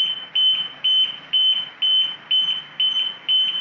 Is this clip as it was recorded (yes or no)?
yes